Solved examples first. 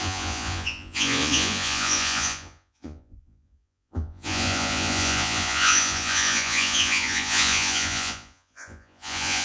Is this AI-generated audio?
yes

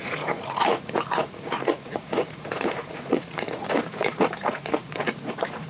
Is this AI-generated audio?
yes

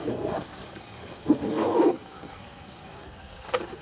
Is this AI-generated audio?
yes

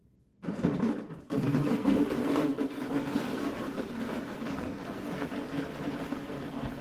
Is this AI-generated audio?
yes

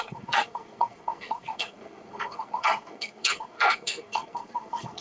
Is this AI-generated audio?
yes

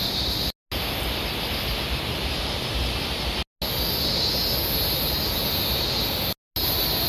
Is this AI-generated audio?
no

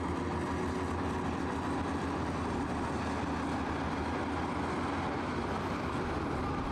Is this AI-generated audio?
no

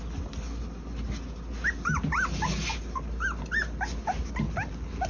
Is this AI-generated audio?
no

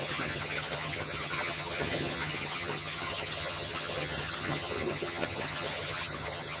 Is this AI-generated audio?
yes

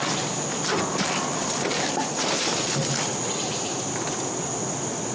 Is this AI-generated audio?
no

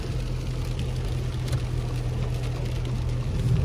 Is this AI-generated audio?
no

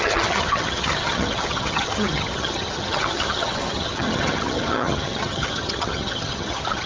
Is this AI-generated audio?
yes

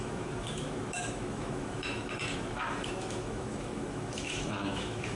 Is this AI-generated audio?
yes